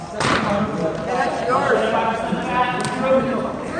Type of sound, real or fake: real